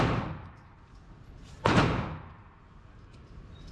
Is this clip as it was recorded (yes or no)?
yes